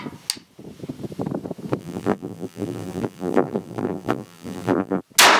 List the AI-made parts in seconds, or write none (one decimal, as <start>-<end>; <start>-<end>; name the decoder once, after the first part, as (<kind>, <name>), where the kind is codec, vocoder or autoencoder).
1.8-5.0 (vocoder, BigVGAN v2)